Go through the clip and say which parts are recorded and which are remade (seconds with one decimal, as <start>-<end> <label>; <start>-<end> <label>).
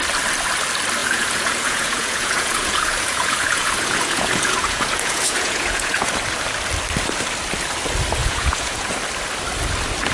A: 0.0-1.0 recorded; 1.0-6.1 remade; 6.1-8.2 recorded; 8.2-8.9 remade; 8.9-10.1 recorded